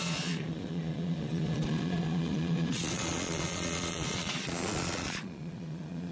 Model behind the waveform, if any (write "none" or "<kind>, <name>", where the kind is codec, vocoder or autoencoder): vocoder, Vocos